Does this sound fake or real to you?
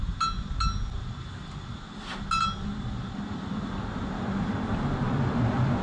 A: real